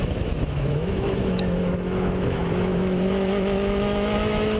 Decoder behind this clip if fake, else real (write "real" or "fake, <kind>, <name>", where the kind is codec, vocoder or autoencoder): fake, autoencoder, DAC-VAE